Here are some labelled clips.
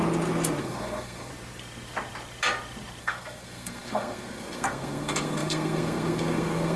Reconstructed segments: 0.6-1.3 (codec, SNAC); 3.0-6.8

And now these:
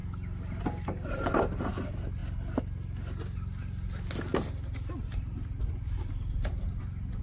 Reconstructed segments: none

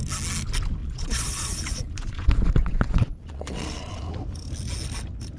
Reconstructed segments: 0.8-4.0 (vocoder, Vocos)

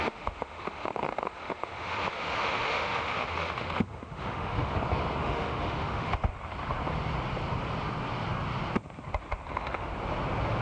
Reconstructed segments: 0.0-4.7 (autoencoder, DAC-VAE); 5.2-6.3; 9.5-9.9

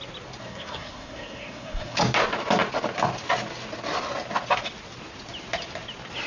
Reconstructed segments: 0.4-2.0 (codec, SNAC)

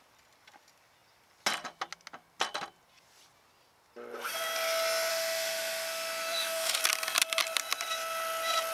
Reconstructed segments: 5.1-6.8 (autoencoder, DAC-VAE)

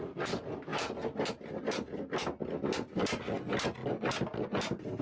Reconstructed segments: none